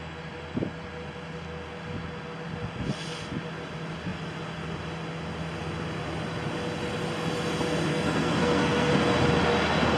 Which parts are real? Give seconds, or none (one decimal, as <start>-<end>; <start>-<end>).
0.0-7.9; 8.9-10.0